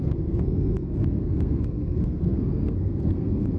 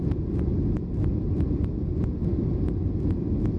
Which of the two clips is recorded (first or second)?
second